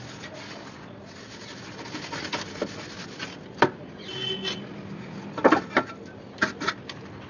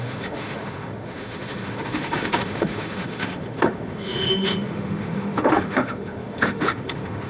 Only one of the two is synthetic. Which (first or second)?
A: second